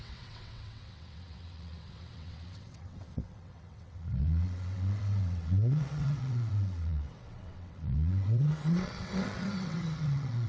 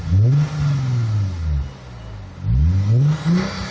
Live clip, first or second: second